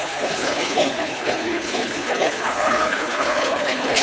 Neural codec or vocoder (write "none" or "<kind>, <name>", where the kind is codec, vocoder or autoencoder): codec, HILCodec